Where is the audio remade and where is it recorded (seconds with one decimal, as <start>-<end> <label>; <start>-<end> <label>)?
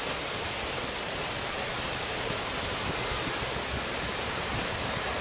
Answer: 0.0-2.8 remade; 2.8-4.1 recorded; 4.1-5.2 remade